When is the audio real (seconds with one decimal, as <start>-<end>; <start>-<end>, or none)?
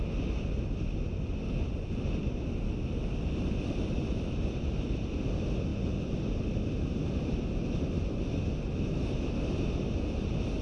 0.0-10.6